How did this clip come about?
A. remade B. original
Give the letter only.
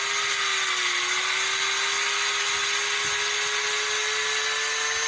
B